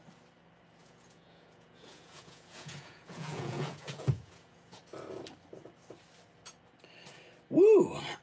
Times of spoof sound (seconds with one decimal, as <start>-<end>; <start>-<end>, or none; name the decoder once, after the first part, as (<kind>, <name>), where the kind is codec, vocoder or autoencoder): 0.8-4.8 (vocoder, Vocos)